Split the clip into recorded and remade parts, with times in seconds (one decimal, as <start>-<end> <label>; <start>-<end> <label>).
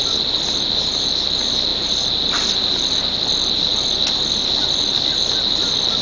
0.0-6.0 recorded